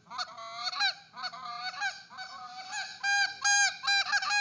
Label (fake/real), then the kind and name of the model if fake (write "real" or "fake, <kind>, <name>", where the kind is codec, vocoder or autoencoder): real